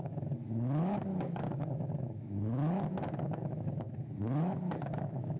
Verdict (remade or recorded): remade